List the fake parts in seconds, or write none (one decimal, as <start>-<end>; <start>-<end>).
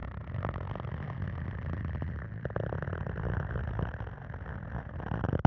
none